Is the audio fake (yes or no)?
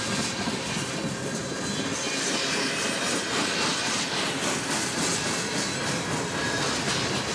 no